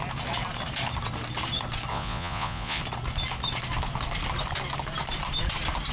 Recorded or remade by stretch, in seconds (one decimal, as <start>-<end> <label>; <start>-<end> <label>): 0.0-1.9 recorded; 1.9-2.8 remade; 2.8-5.9 recorded